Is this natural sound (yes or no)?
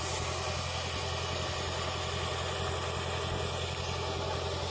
yes